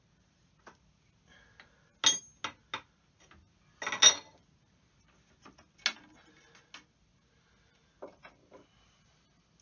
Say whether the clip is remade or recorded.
recorded